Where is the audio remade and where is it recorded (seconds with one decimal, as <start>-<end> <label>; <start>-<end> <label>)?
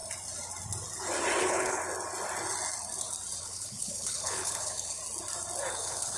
0.0-1.4 recorded; 1.4-1.8 remade; 1.8-3.4 recorded; 3.4-5.0 remade; 5.0-5.7 recorded; 5.7-6.2 remade